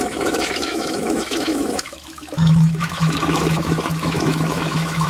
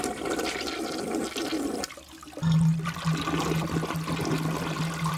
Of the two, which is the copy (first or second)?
first